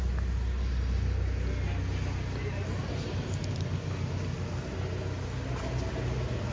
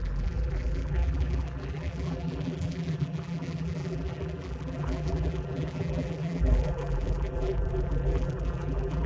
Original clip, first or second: first